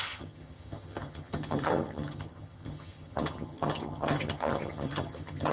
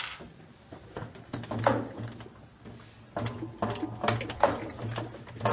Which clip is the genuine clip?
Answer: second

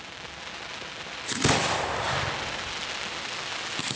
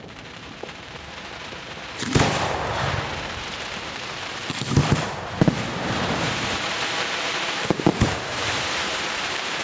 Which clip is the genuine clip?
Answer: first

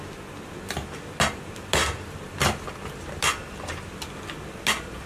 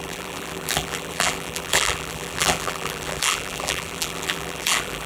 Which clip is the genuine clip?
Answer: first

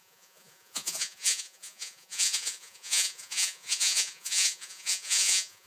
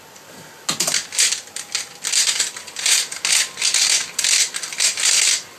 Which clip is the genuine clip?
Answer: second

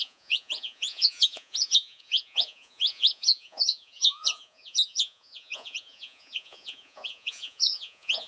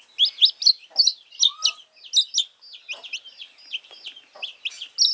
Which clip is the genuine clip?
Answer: second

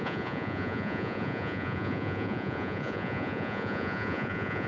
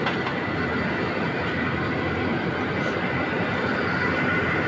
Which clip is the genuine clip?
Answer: second